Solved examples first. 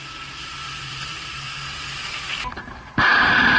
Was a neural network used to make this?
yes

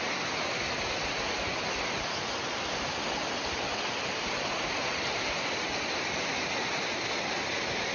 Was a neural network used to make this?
no